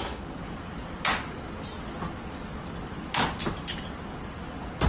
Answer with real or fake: real